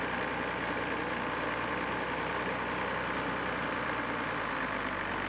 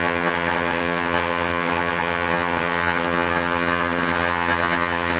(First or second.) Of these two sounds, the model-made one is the second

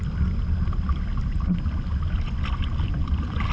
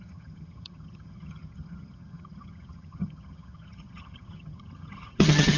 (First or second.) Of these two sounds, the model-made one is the second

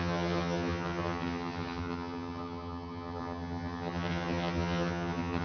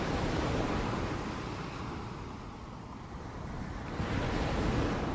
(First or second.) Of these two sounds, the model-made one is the first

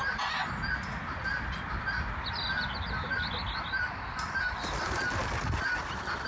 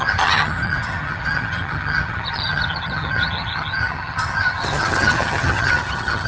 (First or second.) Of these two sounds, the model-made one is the second